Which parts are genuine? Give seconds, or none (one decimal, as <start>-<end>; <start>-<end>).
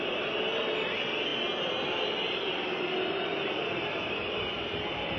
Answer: 0.0-3.3